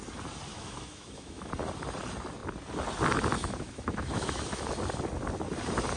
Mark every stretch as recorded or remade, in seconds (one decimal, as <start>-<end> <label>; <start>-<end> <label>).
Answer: 0.0-0.5 recorded; 0.5-1.5 remade; 1.5-3.4 recorded; 3.4-4.6 remade; 4.6-6.0 recorded